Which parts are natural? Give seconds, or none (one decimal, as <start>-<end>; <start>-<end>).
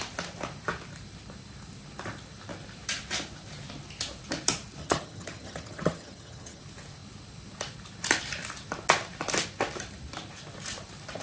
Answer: 0.0-4.8; 6.6-11.2